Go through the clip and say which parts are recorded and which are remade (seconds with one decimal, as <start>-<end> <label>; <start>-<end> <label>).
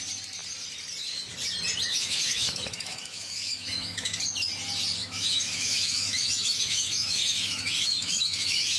0.0-1.9 recorded; 1.9-4.2 remade; 4.2-5.0 recorded; 5.0-8.8 remade